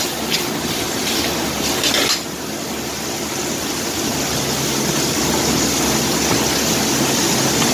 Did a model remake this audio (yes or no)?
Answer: no